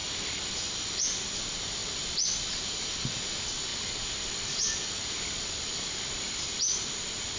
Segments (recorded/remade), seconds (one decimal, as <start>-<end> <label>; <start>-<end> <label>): 0.0-7.4 recorded